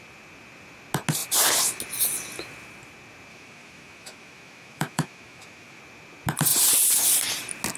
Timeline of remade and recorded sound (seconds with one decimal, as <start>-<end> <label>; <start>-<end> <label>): 0.0-3.3 recorded; 3.3-5.8 remade; 5.8-7.8 recorded